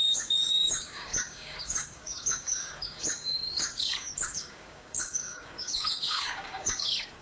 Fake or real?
fake